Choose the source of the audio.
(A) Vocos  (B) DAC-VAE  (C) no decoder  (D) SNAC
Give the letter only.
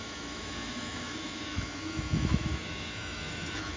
B